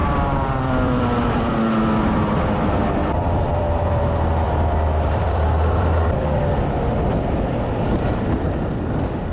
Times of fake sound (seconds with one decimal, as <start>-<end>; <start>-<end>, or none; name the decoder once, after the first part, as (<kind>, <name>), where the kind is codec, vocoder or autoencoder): 0.0-1.5 (vocoder, BigVGAN v2); 3.0-6.9